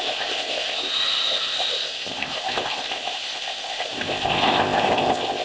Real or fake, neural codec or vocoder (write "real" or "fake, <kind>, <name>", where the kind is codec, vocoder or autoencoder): fake, codec, ZipCodec